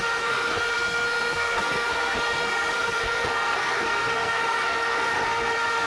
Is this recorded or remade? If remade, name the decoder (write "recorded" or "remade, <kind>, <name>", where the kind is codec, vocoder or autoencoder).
remade, codec, SNAC